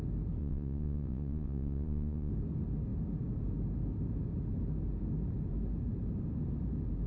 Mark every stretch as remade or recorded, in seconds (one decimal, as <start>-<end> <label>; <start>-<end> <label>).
0.0-0.4 recorded; 0.4-2.3 remade; 2.3-7.1 recorded